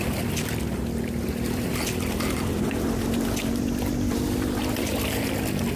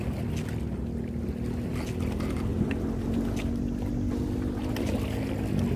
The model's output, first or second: first